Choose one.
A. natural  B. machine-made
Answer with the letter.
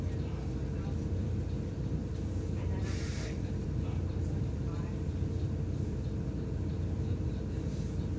B